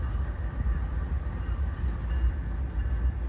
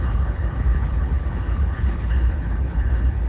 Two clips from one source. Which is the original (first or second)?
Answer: first